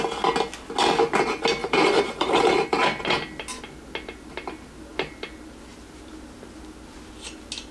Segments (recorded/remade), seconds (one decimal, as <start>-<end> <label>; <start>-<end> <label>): 0.0-1.6 recorded; 1.6-2.8 remade; 2.8-7.7 recorded